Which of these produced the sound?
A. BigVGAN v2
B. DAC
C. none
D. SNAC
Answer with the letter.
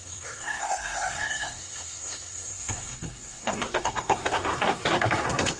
D